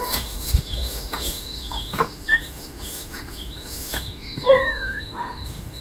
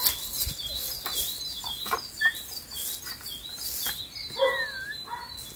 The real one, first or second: second